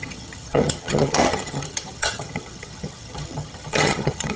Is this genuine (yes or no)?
no